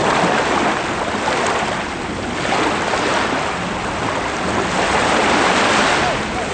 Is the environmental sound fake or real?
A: real